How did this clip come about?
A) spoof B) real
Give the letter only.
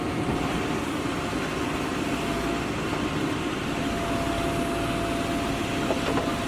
B